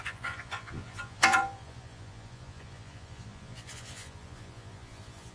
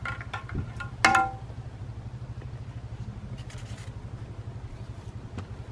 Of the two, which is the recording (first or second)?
second